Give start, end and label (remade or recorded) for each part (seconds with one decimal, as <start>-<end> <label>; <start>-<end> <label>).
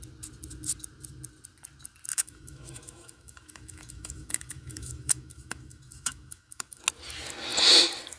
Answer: 0.0-2.1 recorded; 2.1-6.8 remade; 6.8-8.2 recorded